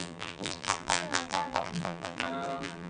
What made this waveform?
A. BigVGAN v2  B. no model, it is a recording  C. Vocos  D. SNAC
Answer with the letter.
A